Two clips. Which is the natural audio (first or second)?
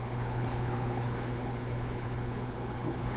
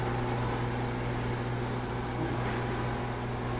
second